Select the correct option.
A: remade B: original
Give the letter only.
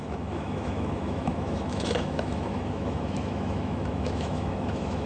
A